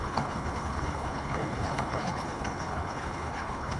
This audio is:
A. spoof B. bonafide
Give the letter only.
A